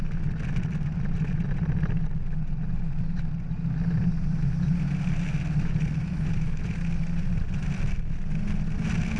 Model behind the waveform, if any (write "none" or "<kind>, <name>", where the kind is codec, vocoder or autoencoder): none